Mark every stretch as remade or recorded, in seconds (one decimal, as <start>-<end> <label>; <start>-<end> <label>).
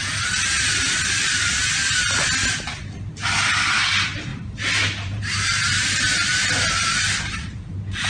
0.0-4.3 recorded; 4.3-6.1 remade; 6.1-8.1 recorded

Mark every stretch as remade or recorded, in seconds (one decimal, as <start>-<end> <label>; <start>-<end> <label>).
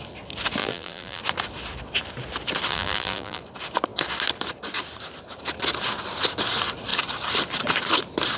0.0-0.6 recorded; 0.6-1.2 remade; 1.2-2.7 recorded; 2.7-3.4 remade; 3.4-8.4 recorded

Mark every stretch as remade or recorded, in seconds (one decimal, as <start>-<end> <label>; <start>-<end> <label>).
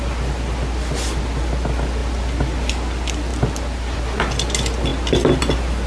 0.0-5.9 recorded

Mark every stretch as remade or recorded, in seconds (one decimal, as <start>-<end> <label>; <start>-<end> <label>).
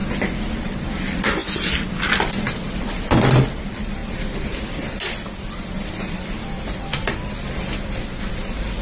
0.0-0.9 remade; 0.9-4.0 recorded; 4.0-8.3 remade; 8.3-8.8 recorded